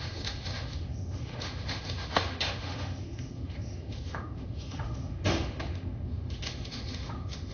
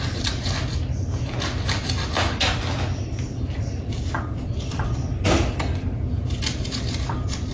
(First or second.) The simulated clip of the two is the first